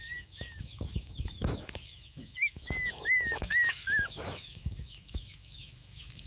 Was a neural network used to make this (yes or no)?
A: yes